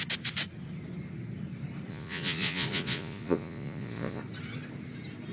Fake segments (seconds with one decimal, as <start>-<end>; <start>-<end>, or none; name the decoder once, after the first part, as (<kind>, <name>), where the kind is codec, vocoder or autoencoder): 1.9-4.2 (vocoder, Vocos)